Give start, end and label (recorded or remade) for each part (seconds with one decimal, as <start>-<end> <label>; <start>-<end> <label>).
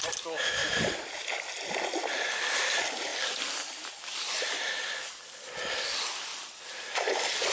0.0-0.6 recorded; 0.6-1.1 remade; 1.1-3.1 recorded; 3.1-4.5 remade; 4.5-7.5 recorded